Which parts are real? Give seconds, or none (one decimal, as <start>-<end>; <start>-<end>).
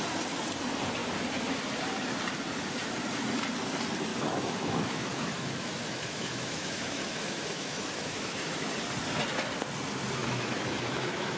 0.0-4.1; 8.7-10.2